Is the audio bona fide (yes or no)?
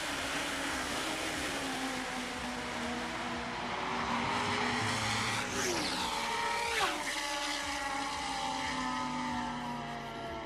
yes